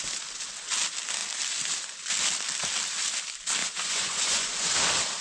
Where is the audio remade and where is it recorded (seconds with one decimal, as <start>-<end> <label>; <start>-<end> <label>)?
0.0-3.6 recorded; 3.6-4.7 remade; 4.7-5.2 recorded